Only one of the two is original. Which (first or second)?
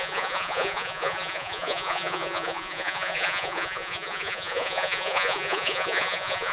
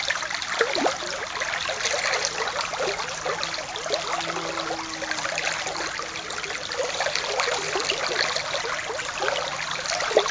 second